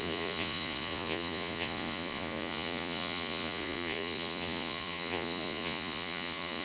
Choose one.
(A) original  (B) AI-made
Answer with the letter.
B